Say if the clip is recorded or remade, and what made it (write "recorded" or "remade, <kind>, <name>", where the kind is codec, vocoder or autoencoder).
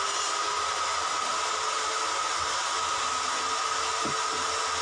recorded